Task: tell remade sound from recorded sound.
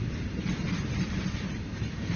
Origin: remade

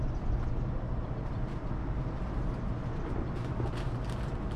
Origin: remade